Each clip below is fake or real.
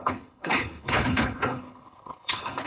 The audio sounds fake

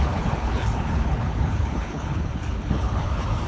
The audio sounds fake